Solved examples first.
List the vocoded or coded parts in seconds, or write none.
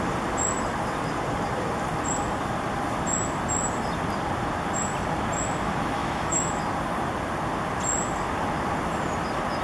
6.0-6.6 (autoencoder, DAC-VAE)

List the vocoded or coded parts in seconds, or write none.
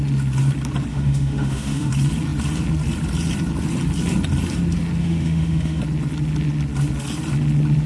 0.9-1.9 (autoencoder, DAC-VAE); 5.0-5.8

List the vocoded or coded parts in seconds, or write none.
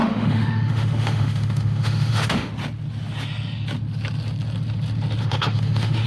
0.0-2.5 (autoencoder, DAC-VAE); 5.2-6.1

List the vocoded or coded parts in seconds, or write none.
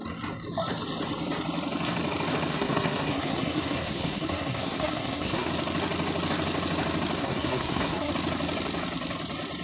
2.5-5.5 (codec, SNAC); 7.2-8.1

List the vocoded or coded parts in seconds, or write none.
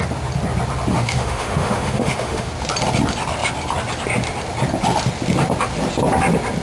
0.9-2.5 (autoencoder, DAC-VAE)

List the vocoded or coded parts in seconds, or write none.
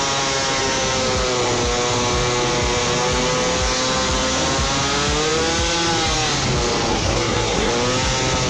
6.9-7.7 (codec, SNAC)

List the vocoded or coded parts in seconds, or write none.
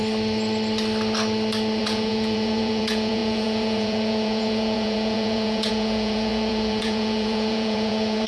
1.8-8.3 (vocoder, Vocos)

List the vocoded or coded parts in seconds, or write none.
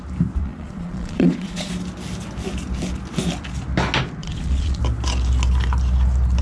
0.4-1.7 (vocoder, Vocos); 4.2-4.8